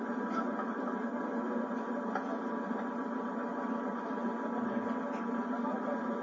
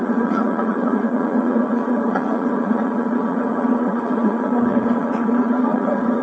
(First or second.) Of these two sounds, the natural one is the first